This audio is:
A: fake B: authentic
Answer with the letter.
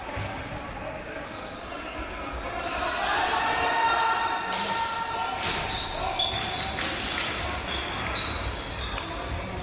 B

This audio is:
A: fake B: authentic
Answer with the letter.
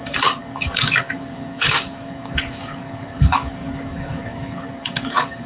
A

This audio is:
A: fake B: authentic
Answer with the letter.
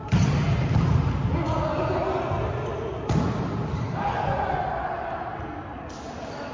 B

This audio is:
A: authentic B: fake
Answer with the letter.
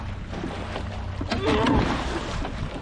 A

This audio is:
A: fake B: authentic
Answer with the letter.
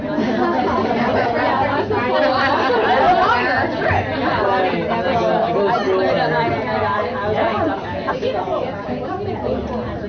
B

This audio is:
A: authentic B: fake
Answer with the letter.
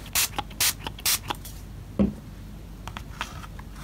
A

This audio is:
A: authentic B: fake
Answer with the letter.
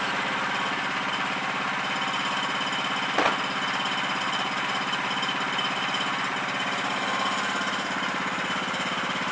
A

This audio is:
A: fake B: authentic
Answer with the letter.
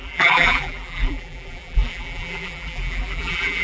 A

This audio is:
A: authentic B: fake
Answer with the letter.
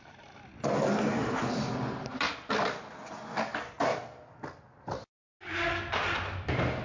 A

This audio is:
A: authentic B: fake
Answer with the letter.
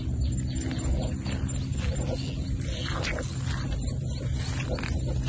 A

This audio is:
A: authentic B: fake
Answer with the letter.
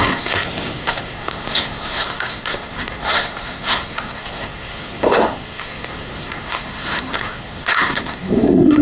B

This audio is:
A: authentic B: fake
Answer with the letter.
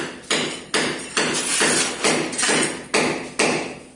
A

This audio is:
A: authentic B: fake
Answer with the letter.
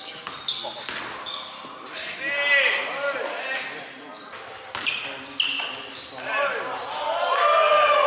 A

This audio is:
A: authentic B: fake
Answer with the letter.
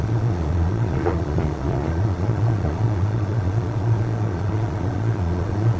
B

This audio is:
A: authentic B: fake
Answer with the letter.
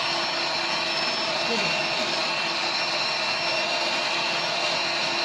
A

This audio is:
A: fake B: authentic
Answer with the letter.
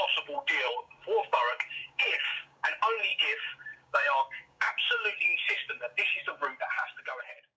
A